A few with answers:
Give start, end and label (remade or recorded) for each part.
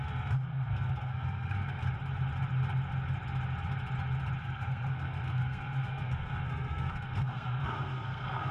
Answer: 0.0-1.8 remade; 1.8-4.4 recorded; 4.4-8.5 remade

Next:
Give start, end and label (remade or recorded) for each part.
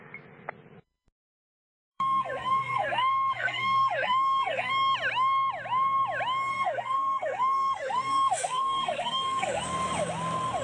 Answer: 0.0-1.6 recorded; 1.6-4.7 remade; 4.7-6.5 recorded; 6.5-9.6 remade; 9.6-10.6 recorded